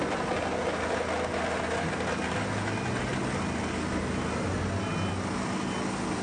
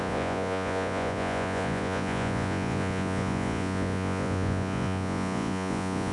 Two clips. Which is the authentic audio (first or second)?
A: first